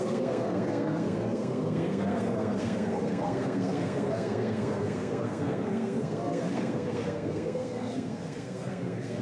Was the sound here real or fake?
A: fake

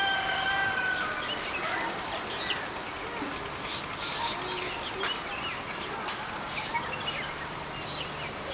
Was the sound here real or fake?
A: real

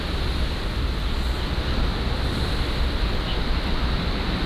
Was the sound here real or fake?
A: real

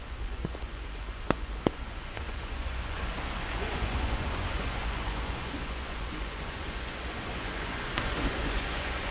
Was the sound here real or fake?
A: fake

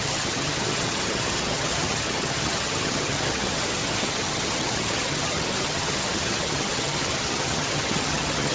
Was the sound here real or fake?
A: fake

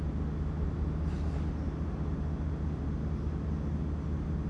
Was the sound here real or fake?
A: real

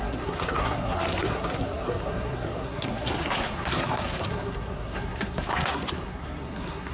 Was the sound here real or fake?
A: fake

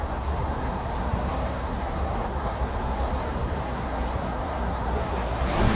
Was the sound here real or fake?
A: fake